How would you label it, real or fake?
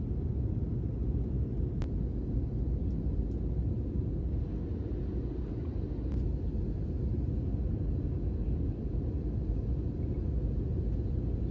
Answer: real